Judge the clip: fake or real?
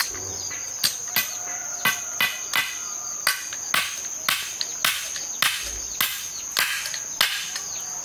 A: real